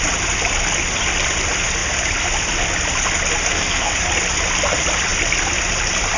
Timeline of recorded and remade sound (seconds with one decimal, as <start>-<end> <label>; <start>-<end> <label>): 0.0-3.5 recorded; 3.5-4.0 remade; 4.0-6.2 recorded